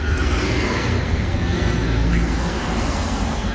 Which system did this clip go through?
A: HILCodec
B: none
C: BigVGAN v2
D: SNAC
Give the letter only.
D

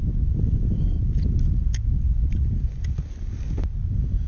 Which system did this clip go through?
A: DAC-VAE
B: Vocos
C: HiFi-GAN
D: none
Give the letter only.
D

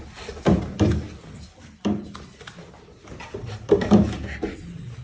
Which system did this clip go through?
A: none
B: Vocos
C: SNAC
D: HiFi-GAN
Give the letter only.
A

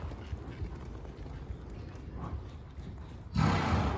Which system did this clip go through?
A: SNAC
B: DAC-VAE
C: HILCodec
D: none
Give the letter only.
D